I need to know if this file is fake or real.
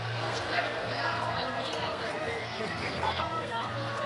fake